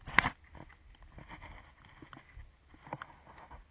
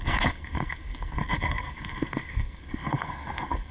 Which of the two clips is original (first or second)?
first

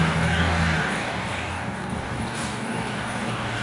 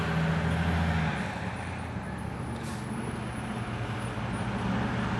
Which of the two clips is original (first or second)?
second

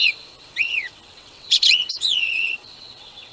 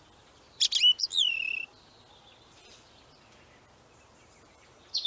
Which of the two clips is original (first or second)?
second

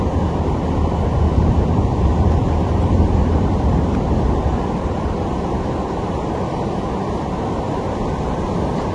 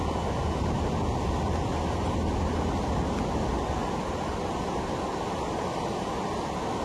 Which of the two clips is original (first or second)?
second